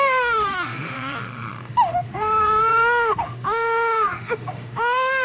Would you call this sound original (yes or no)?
no